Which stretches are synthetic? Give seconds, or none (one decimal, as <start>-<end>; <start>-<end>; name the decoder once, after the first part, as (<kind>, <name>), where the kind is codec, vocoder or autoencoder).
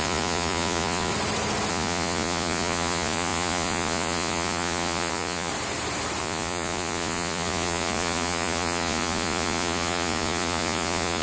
0.0-1.1 (vocoder, Vocos); 1.7-5.5; 6.2-11.2